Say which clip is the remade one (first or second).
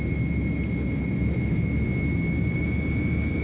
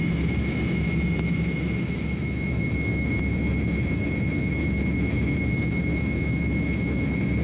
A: second